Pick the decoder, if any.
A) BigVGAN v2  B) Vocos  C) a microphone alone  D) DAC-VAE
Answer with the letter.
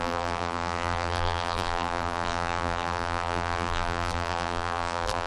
A